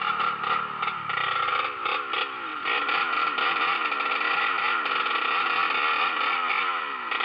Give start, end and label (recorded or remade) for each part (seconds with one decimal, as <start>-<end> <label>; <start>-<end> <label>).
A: 0.0-7.2 recorded